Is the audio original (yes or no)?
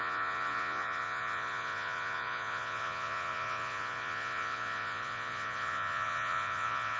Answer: no